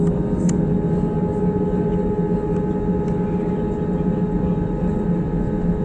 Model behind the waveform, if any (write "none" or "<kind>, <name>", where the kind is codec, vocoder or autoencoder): none